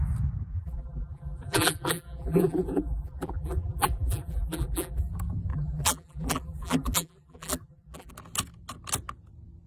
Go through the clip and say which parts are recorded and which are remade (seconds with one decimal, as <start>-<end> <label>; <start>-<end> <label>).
0.0-0.5 recorded; 0.5-5.1 remade; 5.1-5.5 recorded; 5.5-8.1 remade; 8.1-9.7 recorded